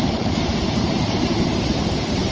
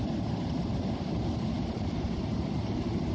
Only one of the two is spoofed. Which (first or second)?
first